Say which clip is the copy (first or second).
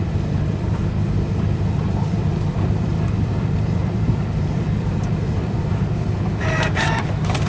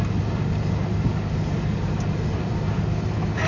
first